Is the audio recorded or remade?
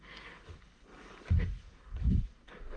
remade